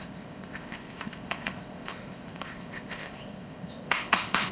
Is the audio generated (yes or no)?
yes